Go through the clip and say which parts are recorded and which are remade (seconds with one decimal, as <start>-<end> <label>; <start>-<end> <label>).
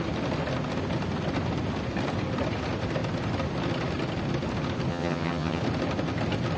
0.0-4.9 recorded; 4.9-5.6 remade; 5.6-6.6 recorded